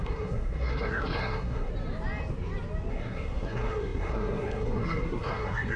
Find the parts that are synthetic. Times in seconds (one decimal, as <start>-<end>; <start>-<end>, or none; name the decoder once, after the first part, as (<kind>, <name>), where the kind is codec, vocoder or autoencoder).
0.0-1.7 (codec, SNAC); 2.9-5.8